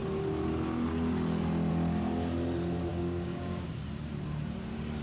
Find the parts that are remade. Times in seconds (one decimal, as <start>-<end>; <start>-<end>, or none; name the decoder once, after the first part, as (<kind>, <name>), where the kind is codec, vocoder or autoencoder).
2.9-3.7 (codec, DAC)